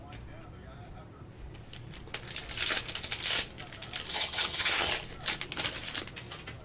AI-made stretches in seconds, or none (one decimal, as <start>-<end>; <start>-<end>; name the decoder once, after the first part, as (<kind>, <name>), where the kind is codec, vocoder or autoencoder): 4.1-4.9 (vocoder, HiFi-GAN)